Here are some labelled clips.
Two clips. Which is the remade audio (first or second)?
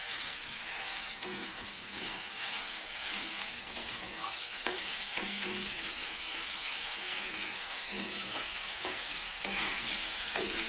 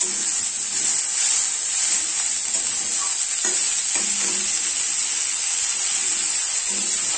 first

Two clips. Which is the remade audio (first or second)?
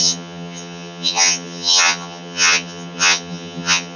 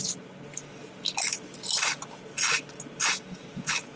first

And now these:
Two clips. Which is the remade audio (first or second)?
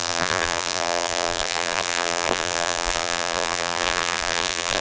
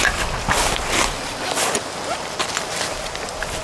first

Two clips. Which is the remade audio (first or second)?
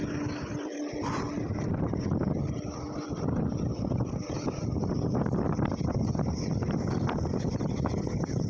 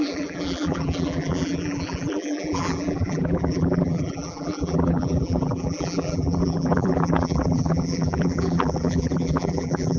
second